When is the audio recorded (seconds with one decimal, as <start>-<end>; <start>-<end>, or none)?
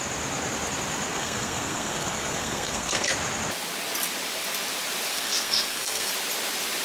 0.0-1.1; 3.1-5.1; 6.1-6.8